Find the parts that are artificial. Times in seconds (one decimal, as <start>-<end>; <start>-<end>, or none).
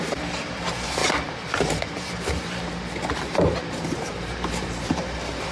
0.0-5.5